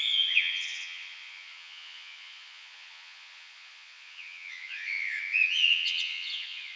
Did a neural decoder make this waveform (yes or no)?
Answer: yes